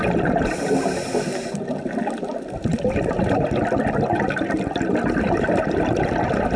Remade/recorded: recorded